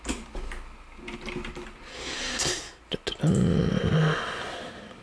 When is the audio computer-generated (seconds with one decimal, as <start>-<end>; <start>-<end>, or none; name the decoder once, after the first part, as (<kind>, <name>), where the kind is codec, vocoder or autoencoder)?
1.9-2.8 (codec, SNAC)